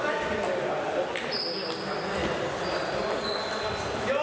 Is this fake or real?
real